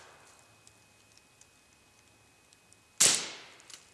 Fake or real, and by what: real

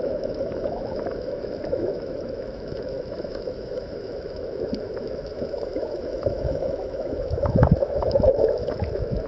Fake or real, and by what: fake, autoencoder, DAC-VAE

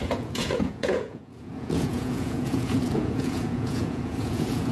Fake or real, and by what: fake, vocoder, Vocos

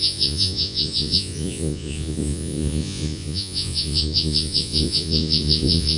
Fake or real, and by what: fake, vocoder, Vocos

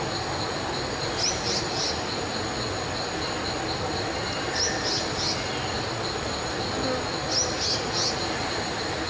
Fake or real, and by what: real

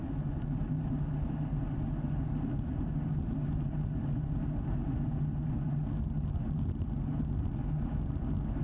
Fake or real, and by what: real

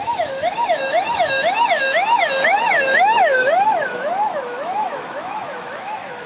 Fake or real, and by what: fake, autoencoder, DAC-VAE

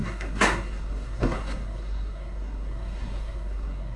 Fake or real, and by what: fake, codec, SNAC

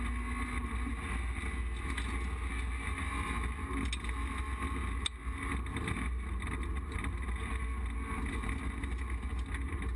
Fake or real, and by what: real